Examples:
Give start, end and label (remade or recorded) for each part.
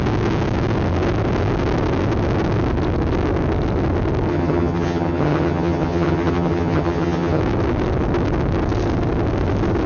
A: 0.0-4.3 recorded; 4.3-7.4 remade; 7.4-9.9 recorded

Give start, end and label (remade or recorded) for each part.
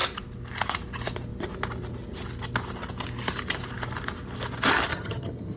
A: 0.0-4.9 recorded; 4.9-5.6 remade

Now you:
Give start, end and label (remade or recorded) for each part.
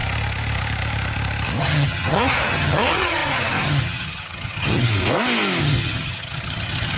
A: 0.0-1.6 recorded; 1.6-4.9 remade; 4.9-5.6 recorded; 5.6-7.0 remade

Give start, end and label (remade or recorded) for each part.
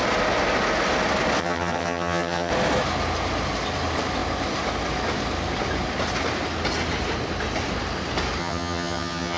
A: 0.0-1.4 recorded; 1.4-2.5 remade; 2.5-8.4 recorded; 8.4-9.4 remade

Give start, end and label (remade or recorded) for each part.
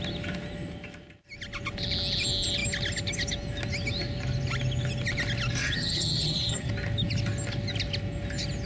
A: 0.0-5.6 recorded; 5.6-6.7 remade; 6.7-8.7 recorded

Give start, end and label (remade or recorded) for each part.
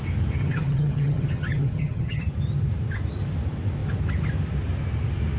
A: 0.0-0.4 recorded; 0.4-2.2 remade; 2.2-5.4 recorded